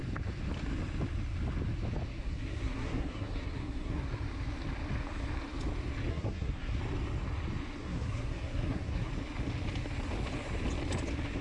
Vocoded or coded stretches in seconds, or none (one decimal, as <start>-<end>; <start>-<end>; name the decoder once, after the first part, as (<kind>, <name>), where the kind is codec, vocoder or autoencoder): 2.2-4.0 (codec, SNAC); 6.1-6.8; 7.8-9.1

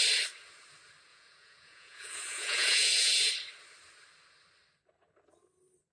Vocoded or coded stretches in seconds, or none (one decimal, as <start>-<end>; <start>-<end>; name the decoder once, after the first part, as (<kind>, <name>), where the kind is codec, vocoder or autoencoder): 1.1-3.3 (vocoder, Vocos)

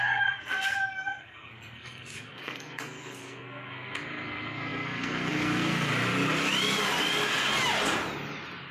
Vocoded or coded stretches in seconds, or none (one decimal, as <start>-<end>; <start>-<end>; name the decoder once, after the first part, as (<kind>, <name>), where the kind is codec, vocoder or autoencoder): 0.0-5.9 (codec, SNAC)

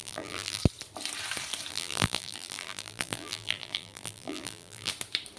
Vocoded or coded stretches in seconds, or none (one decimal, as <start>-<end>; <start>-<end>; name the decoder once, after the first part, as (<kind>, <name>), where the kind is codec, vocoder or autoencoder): 0.0-0.6 (vocoder, BigVGAN v2); 1.7-4.9

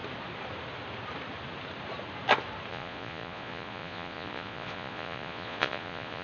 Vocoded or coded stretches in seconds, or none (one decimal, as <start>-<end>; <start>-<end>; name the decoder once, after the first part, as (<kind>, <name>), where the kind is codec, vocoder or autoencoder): 2.7-6.2 (vocoder, Vocos)

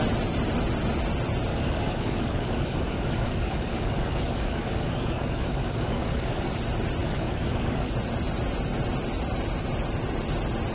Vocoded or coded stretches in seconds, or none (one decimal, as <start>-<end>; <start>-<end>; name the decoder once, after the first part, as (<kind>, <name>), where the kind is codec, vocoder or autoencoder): 1.5-6.5 (codec, DAC); 7.0-7.9

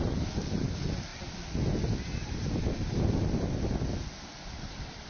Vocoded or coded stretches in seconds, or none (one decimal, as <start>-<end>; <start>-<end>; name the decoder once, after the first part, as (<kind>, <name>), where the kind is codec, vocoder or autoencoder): none